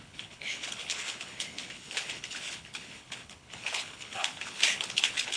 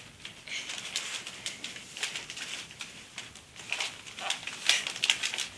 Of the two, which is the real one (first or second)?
second